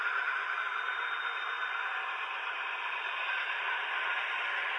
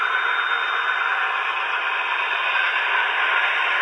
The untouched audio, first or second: second